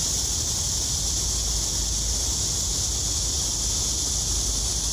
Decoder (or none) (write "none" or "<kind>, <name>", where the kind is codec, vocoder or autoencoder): none